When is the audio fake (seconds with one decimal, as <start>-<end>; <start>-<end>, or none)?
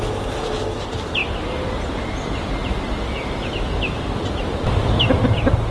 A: none